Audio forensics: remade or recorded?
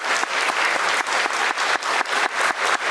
recorded